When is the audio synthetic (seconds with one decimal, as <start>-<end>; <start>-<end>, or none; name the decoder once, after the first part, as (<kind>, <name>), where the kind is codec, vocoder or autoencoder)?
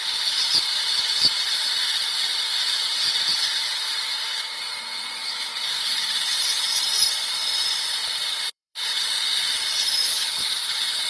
0.0-11.1 (vocoder, BigVGAN v2)